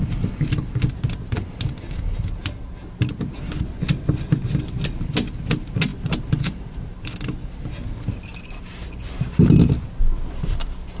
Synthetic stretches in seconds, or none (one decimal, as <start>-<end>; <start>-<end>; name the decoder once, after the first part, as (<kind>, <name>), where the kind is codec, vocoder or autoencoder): none